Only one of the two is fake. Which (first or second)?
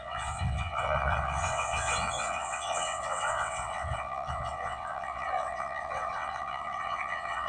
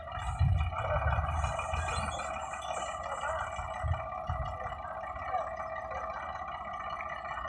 first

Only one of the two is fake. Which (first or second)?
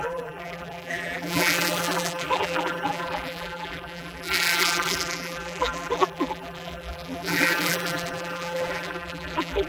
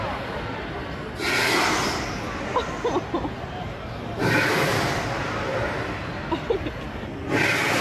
first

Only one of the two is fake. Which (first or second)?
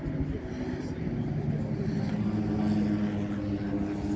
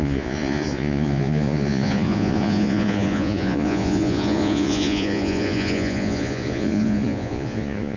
second